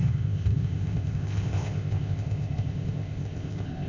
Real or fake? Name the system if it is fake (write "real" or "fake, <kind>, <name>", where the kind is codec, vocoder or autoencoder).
fake, codec, ZipCodec